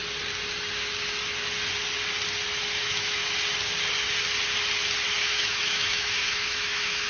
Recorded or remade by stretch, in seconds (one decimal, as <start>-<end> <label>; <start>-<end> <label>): 0.0-2.8 recorded; 2.8-3.2 remade; 3.2-5.3 recorded; 5.3-7.1 remade